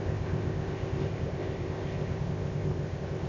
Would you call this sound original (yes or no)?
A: no